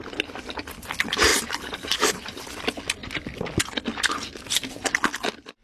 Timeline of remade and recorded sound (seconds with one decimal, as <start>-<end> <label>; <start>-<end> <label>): 0.0-1.3 recorded; 1.3-2.5 remade; 2.5-5.6 recorded